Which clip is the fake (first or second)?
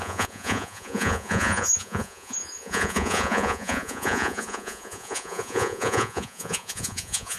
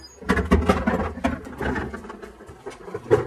first